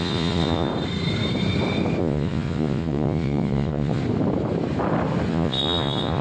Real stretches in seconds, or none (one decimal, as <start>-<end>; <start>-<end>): 0.7-2.0; 4.0-5.3

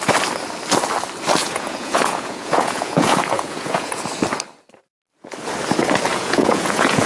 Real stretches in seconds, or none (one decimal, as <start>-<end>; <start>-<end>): 0.0-1.4; 4.0-6.1

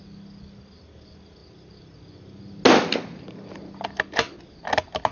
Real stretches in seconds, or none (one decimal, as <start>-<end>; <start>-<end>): 0.0-5.1